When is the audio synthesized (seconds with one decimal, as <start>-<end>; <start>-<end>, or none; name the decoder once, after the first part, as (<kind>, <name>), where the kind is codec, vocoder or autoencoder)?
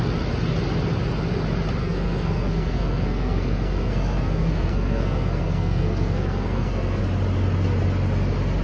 1.8-7.0 (codec, SNAC)